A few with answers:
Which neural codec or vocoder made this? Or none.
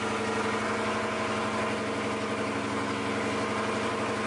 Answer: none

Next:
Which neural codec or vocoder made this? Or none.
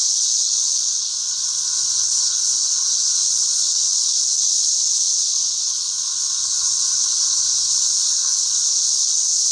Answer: codec, HILCodec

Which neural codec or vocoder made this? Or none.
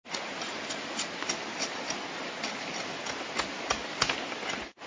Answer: none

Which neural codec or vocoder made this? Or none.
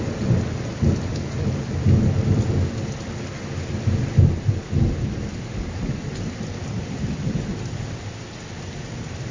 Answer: none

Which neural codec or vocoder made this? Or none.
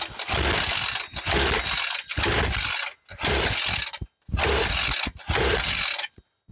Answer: none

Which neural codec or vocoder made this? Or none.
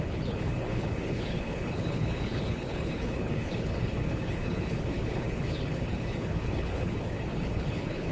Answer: codec, HILCodec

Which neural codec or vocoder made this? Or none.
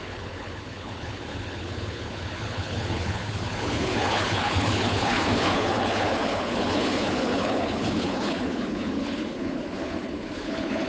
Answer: codec, HILCodec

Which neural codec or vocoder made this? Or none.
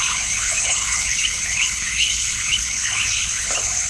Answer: codec, HILCodec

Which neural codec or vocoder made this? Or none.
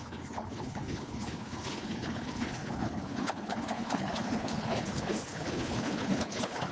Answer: codec, HILCodec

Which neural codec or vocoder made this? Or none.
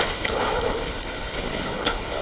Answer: codec, HILCodec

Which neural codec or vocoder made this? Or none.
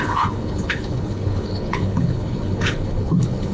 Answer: codec, HILCodec